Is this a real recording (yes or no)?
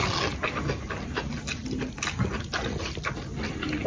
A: yes